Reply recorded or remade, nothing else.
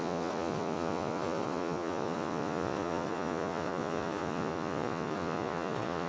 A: remade